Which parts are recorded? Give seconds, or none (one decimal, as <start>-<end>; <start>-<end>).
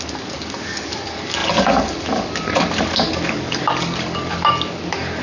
none